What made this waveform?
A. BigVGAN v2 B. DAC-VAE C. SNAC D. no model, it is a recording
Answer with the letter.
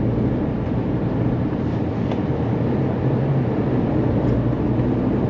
A